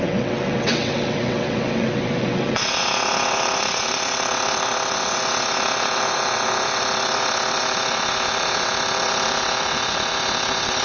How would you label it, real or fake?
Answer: fake